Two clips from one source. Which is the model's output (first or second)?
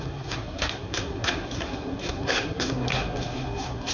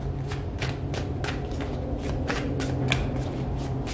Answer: first